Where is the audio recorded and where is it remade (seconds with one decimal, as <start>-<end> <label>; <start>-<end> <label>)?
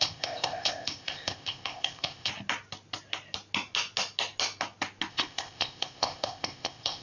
0.0-2.3 remade; 2.3-5.1 recorded; 5.1-7.0 remade